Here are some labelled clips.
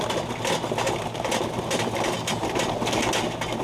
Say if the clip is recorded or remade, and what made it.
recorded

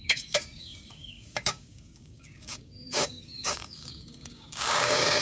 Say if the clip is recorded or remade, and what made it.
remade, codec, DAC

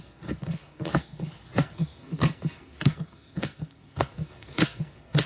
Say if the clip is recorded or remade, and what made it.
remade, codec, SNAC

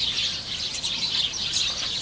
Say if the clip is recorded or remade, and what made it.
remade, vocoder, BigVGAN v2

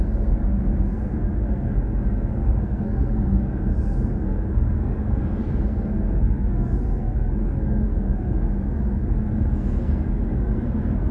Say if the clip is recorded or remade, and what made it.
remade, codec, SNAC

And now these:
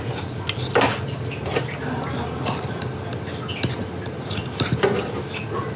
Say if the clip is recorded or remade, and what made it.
recorded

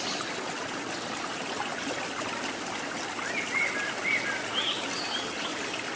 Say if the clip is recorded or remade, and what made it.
recorded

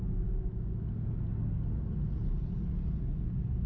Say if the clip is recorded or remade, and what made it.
recorded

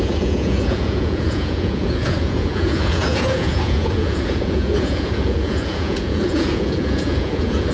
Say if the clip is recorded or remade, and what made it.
remade, vocoder, Vocos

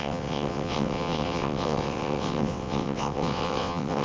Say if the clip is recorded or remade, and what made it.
remade, vocoder, WaveNeXt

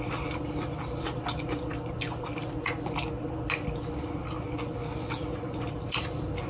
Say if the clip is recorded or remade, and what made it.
recorded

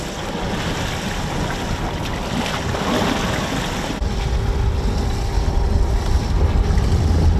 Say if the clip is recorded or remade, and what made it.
recorded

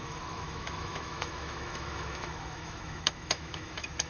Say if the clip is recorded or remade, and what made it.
remade, autoencoder, DAC-VAE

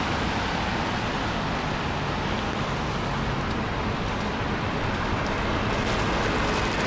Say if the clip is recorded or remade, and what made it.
recorded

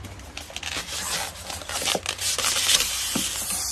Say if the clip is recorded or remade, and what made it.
recorded